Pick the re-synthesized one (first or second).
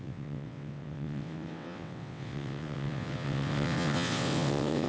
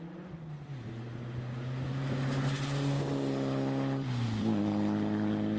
first